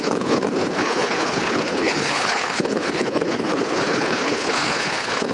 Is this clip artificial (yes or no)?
yes